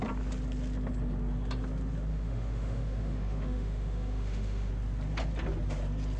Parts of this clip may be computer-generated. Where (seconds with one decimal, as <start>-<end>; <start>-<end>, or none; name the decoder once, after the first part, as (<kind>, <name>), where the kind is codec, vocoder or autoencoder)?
2.1-4.7 (autoencoder, DAC-VAE)